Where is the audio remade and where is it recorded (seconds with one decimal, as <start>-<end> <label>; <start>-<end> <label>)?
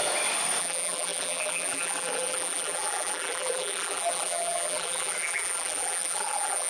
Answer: 0.0-0.6 recorded; 0.6-6.7 remade